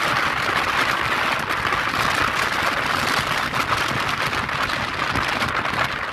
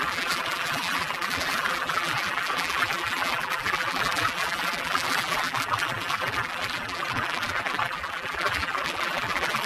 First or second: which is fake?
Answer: second